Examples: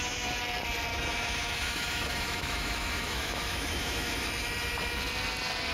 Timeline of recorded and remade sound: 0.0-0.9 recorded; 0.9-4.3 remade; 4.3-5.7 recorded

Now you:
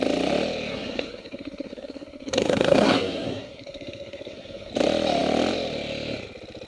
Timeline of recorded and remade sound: 0.0-0.7 recorded; 0.7-4.7 remade; 4.7-6.7 recorded

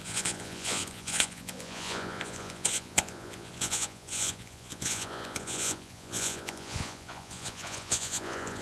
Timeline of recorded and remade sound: 0.0-8.6 remade

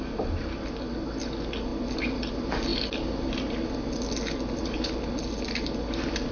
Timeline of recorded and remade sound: 0.0-6.3 recorded

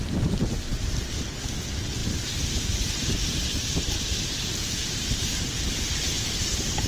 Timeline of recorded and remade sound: 0.0-2.0 recorded; 2.0-6.1 remade; 6.1-6.9 recorded

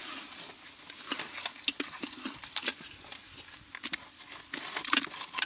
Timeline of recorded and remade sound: 0.0-5.5 recorded

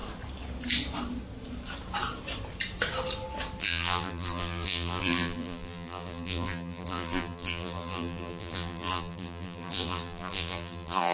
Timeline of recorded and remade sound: 0.0-3.6 recorded; 3.6-11.1 remade

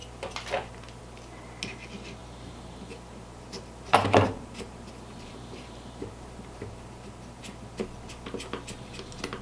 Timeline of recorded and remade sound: 0.0-2.2 recorded; 2.2-7.4 remade; 7.4-9.4 recorded